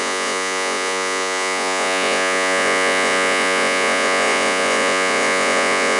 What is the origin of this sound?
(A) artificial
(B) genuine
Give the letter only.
A